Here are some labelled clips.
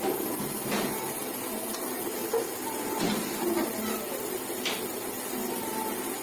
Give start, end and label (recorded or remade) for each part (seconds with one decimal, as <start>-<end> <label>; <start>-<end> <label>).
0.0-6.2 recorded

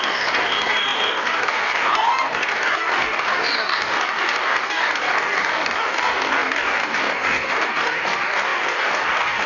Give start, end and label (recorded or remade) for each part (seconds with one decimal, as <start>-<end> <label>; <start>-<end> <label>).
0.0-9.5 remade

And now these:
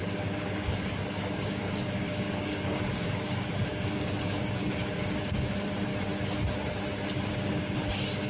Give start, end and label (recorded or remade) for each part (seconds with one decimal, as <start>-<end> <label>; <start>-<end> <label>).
0.0-5.9 remade; 5.9-7.3 recorded; 7.3-8.3 remade